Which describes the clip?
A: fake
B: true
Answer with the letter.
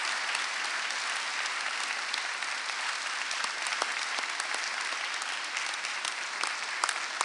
B